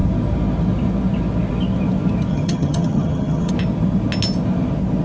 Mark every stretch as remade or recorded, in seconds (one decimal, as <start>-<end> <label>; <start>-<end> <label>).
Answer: 0.0-2.3 recorded; 2.3-3.5 remade; 3.5-5.0 recorded